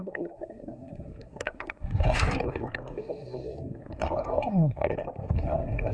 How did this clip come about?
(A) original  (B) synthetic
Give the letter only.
B